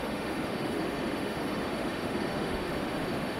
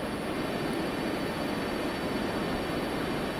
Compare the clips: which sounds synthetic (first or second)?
first